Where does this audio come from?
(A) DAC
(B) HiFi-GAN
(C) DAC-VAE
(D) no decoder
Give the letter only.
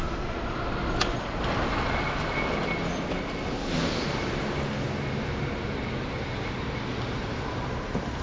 D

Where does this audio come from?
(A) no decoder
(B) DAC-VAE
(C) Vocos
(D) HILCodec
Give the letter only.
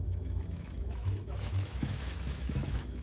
B